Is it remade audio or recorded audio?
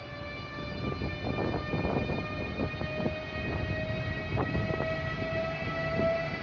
recorded